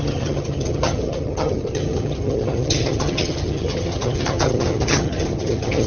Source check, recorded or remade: remade